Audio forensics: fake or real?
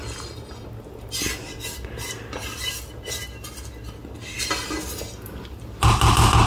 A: real